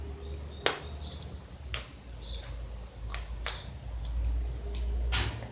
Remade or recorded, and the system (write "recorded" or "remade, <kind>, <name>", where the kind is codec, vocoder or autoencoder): recorded